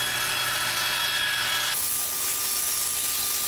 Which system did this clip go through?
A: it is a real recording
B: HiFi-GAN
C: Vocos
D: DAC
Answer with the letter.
A